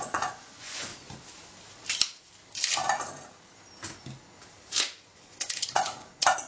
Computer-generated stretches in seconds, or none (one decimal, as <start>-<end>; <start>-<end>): 0.0-0.9; 4.8-6.5